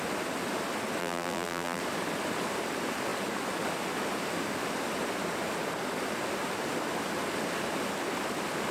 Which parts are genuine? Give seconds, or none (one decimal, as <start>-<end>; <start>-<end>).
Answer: 0.0-1.0; 1.8-8.7